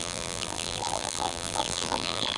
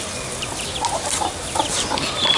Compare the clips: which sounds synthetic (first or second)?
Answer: first